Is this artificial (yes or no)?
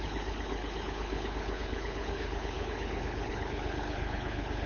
yes